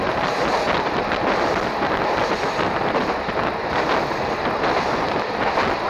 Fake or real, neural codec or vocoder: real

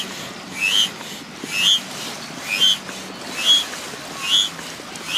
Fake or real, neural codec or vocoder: real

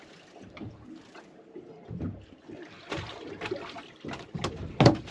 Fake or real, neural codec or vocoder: real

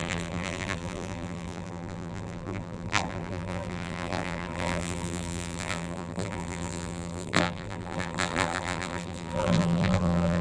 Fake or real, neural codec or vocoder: fake, vocoder, BigVGAN v2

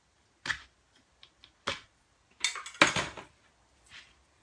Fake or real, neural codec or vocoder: real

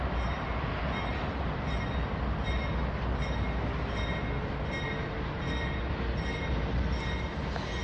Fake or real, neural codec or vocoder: real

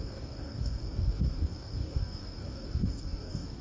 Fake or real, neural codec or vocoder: fake, codec, DAC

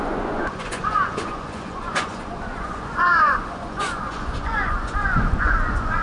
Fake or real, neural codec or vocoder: fake, vocoder, Vocos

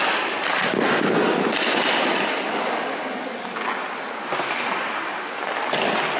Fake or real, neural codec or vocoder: real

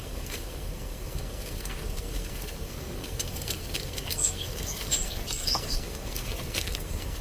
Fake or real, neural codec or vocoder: fake, codec, SNAC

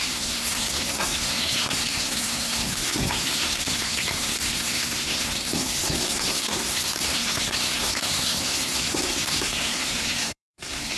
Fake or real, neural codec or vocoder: fake, codec, SNAC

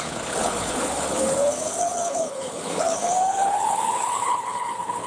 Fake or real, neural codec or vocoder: fake, codec, HILCodec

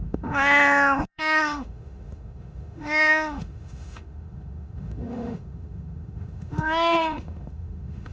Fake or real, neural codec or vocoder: fake, autoencoder, DAC-VAE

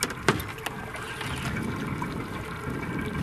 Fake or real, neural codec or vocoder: real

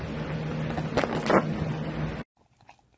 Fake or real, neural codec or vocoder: real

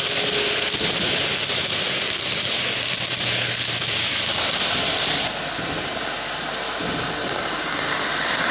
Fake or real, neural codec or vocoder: real